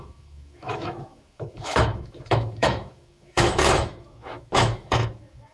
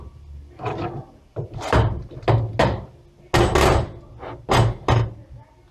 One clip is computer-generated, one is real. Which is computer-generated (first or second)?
first